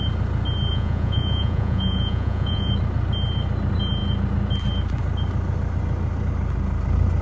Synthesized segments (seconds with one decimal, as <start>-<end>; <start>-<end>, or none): 0.7-2.7